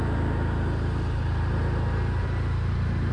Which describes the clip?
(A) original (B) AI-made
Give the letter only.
A